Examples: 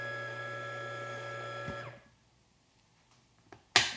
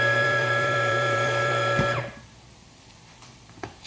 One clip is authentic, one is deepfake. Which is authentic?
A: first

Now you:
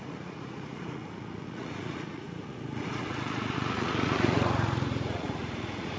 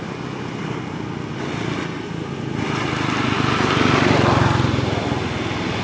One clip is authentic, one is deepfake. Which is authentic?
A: second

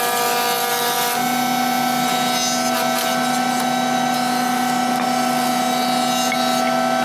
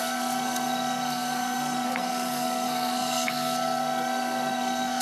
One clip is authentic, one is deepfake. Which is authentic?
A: first